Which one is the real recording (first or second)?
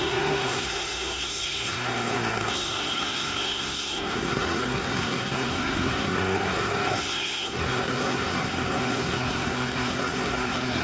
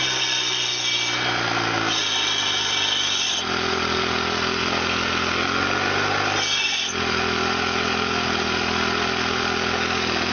second